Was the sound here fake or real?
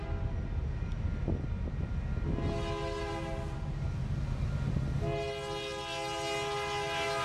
real